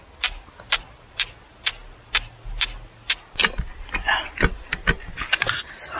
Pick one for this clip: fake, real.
real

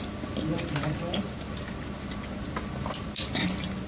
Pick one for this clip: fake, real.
real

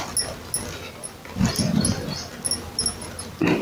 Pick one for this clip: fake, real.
real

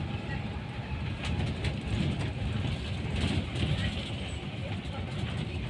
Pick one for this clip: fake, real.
fake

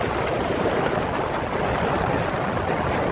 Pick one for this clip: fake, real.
real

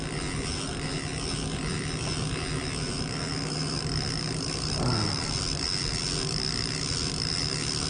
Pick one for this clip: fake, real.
real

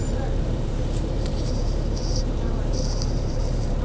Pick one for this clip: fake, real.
fake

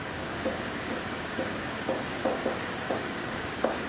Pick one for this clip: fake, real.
fake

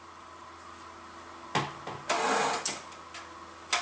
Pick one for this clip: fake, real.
real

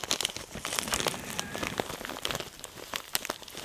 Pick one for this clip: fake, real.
real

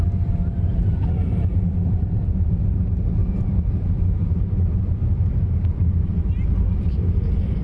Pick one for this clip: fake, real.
fake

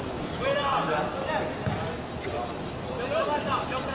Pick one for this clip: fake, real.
real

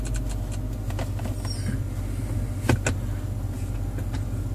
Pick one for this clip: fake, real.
real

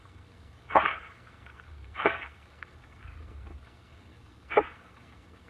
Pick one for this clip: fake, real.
fake